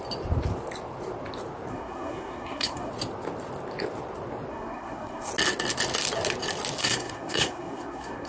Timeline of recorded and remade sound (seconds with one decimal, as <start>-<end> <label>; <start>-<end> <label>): 0.0-1.7 recorded; 1.7-2.9 remade; 2.9-4.5 recorded; 4.5-5.3 remade; 5.3-6.8 recorded; 6.8-8.3 remade